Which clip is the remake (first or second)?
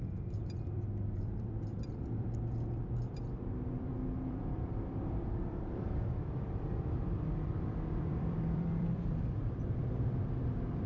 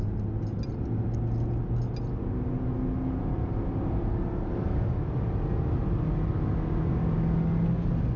first